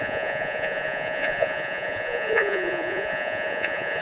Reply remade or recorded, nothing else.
remade